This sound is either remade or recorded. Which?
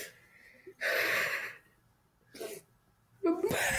recorded